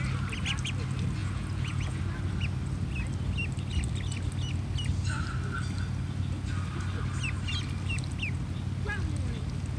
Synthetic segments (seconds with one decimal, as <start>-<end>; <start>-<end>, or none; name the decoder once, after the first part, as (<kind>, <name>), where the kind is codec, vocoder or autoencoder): 1.2-2.0 (vocoder, Vocos)